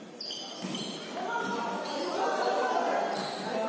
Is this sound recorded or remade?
recorded